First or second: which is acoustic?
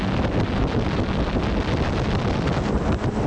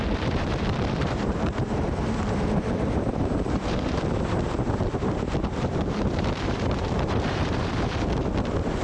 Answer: first